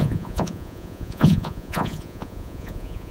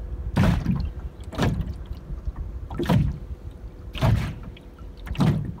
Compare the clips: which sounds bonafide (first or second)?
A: second